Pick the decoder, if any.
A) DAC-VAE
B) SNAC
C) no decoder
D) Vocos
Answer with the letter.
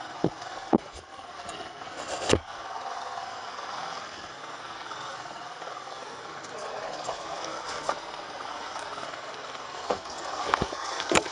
B